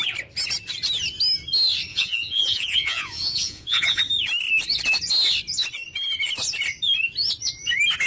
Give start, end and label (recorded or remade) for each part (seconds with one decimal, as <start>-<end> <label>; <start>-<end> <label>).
0.0-1.9 recorded; 1.9-4.0 remade; 4.0-8.1 recorded